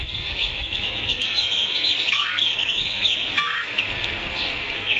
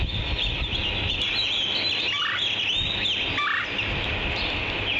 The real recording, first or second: second